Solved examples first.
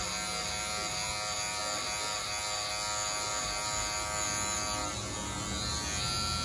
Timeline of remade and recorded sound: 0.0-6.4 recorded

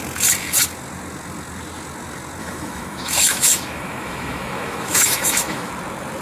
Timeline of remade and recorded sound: 0.0-2.4 recorded; 2.4-5.7 remade; 5.7-6.2 recorded